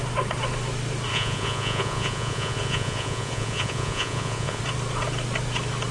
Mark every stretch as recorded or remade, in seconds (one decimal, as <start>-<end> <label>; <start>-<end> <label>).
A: 0.0-1.1 recorded; 1.1-4.6 remade; 4.6-5.9 recorded